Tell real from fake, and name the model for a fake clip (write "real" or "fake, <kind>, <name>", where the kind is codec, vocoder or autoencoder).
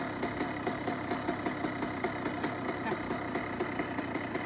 real